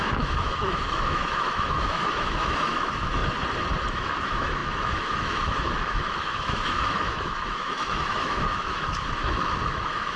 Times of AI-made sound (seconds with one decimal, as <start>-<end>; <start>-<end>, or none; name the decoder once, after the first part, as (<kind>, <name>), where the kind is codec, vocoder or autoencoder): 0.0-3.2 (autoencoder, DAC-VAE); 3.9-10.2